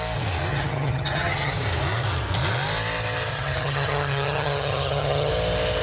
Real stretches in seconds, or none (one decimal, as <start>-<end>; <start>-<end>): 0.0-0.5; 1.5-3.3; 5.3-5.8